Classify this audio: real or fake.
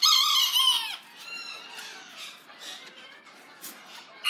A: real